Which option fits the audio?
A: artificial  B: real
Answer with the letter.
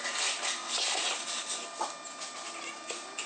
B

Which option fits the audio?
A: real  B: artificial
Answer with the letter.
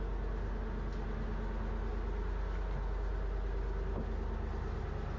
A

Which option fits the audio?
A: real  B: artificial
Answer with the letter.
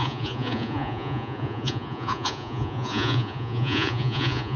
B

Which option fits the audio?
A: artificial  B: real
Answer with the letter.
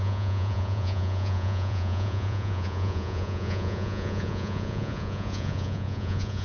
A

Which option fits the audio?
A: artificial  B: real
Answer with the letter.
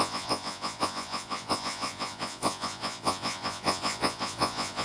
A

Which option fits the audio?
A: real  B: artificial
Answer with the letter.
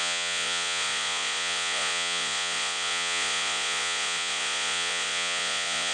B